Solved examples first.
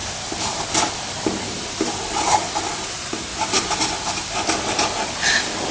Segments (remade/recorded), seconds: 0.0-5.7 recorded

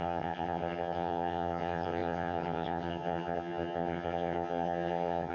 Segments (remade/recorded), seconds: 0.0-5.3 remade